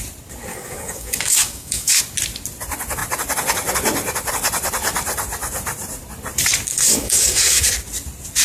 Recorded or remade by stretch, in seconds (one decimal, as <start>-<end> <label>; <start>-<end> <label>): 0.0-0.5 recorded; 0.5-2.0 remade; 2.0-6.7 recorded; 6.7-7.7 remade; 7.7-8.4 recorded